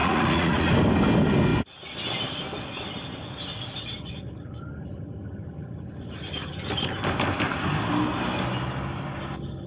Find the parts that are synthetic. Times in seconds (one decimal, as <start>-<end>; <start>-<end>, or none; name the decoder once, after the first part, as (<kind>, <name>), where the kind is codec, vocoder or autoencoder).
0.0-0.7 (vocoder, Vocos)